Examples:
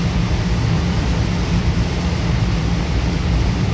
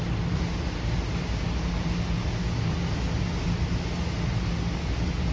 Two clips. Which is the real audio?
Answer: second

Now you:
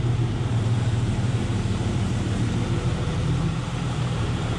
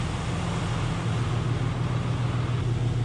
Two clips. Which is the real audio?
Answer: second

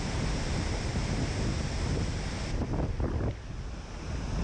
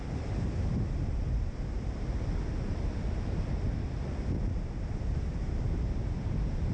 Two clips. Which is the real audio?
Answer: first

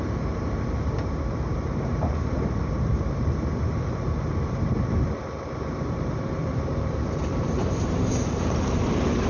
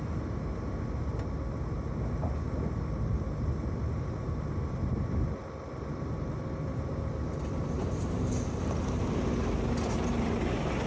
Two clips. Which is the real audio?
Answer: second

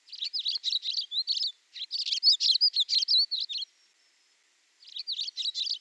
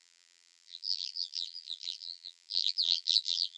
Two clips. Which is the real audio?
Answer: first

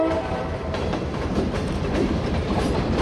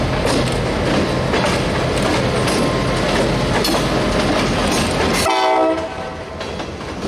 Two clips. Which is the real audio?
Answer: second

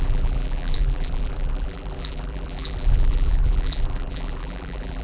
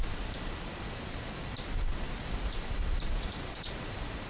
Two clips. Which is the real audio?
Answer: second